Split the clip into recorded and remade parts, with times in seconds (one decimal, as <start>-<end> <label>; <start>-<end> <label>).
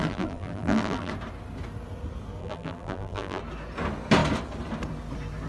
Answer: 0.0-1.1 remade; 1.1-2.4 recorded; 2.4-3.4 remade; 3.4-5.5 recorded